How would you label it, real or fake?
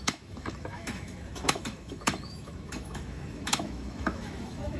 fake